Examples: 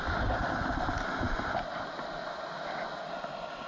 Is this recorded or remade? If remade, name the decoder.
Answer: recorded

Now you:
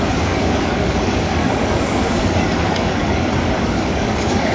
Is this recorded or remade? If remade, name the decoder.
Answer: remade, codec, DAC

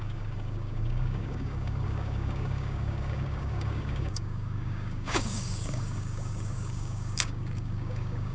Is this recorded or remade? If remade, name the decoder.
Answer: remade, codec, DAC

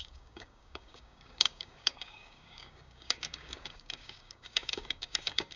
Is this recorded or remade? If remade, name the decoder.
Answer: remade, codec, DAC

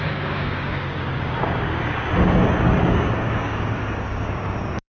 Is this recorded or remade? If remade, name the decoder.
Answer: remade, codec, DAC